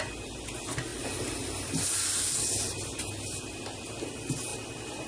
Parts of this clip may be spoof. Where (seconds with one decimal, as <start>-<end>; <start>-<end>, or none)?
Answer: none